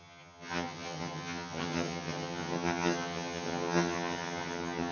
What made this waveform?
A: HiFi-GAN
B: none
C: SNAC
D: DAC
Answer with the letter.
A